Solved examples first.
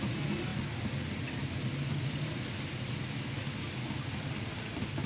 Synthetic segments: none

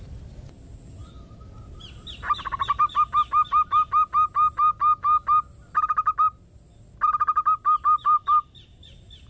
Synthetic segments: none

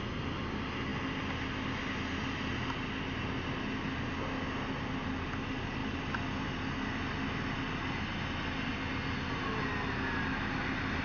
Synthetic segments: none

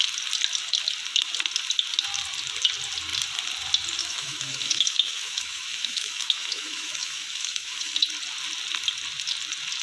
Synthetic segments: 4.0-8.0 (autoencoder, DAC-VAE)

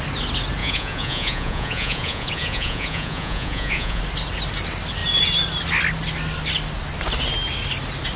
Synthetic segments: 0.6-4.0 (vocoder, Vocos)